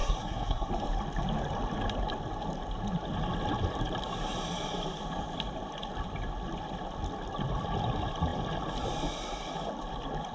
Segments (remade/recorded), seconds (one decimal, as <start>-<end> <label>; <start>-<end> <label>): 0.0-0.7 remade; 0.7-10.3 recorded